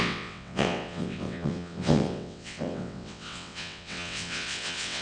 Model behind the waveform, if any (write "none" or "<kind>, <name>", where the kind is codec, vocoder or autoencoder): vocoder, WaveNeXt